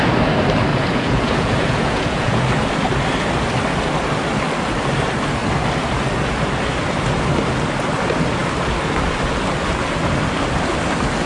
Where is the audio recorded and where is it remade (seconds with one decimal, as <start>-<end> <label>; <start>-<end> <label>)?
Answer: 0.0-0.7 recorded; 0.7-2.4 remade; 2.4-11.3 recorded